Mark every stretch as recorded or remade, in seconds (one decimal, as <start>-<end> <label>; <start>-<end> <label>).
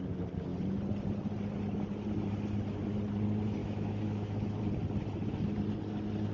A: 0.0-3.6 recorded; 3.6-4.6 remade; 4.6-6.3 recorded